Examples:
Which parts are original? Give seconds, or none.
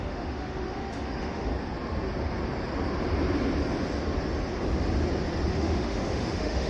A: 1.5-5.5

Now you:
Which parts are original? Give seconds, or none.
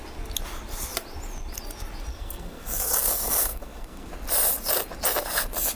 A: 0.0-2.1; 4.1-5.8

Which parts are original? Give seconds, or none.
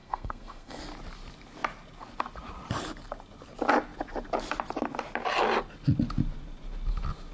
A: 0.8-7.3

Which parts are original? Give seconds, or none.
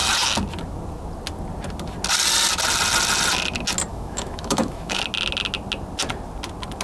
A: 0.0-3.9; 5.0-6.8